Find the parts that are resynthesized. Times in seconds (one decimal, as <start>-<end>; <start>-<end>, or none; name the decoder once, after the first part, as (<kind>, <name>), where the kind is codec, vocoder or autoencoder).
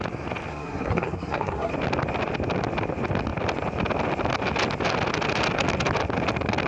0.5-1.7 (codec, SNAC)